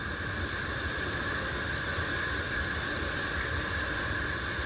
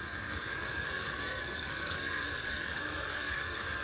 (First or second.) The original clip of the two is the first